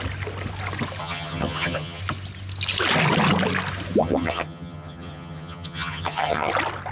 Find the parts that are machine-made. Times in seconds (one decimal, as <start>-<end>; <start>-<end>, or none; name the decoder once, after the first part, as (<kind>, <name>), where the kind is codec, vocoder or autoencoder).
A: 1.0-2.0 (vocoder, HiFi-GAN); 4.0-6.5

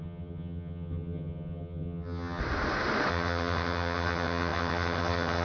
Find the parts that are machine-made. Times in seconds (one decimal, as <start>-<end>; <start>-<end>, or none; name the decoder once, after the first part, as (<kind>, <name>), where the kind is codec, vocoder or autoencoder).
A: 0.0-2.4 (vocoder, HiFi-GAN); 3.1-5.4

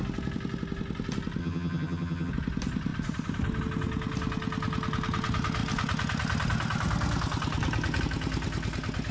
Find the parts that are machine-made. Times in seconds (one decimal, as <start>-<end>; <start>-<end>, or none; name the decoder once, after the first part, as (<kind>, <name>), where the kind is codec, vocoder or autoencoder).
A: 1.4-2.3 (vocoder, HiFi-GAN)

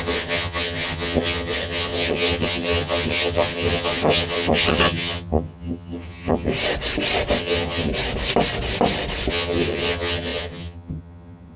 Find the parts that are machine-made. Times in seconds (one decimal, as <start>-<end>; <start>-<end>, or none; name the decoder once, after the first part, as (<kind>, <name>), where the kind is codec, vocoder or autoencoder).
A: 0.0-6.5 (vocoder, HiFi-GAN); 7.4-7.9; 9.3-11.6

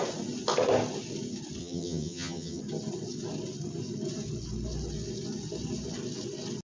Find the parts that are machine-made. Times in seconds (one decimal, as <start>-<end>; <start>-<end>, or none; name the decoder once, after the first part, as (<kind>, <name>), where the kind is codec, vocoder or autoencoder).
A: 1.6-2.6 (vocoder, HiFi-GAN)

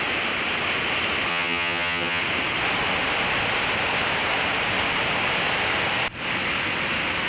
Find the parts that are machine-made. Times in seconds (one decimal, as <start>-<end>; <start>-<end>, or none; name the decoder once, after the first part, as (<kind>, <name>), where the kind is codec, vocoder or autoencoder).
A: 1.3-2.2 (vocoder, HiFi-GAN)

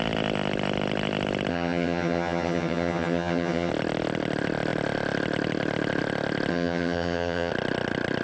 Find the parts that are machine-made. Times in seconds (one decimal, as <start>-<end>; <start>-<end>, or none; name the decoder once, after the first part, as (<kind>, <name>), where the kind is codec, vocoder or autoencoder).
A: 1.5-3.7 (vocoder, HiFi-GAN); 6.5-7.5